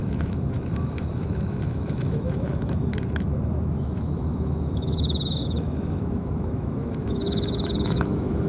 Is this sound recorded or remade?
remade